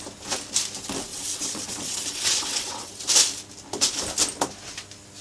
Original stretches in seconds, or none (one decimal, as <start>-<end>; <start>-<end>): 0.0-1.1; 2.9-5.2